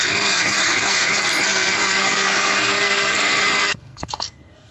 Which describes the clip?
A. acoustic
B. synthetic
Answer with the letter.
B